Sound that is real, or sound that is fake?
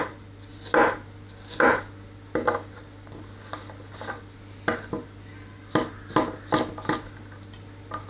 real